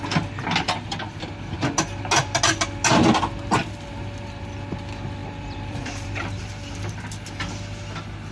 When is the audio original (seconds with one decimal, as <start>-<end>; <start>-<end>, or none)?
0.0-5.2; 6.9-8.3